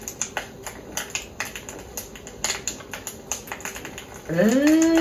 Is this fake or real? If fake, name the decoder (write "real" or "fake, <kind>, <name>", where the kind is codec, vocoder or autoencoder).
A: real